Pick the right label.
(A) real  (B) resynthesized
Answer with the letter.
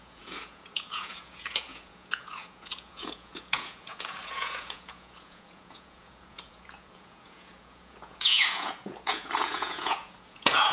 B